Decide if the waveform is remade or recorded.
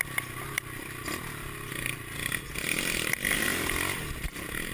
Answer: recorded